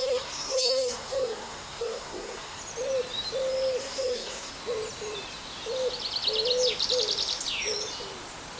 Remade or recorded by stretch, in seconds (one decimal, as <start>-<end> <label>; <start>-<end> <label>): 0.0-2.6 remade; 2.6-3.8 recorded; 3.8-4.5 remade; 4.5-8.6 recorded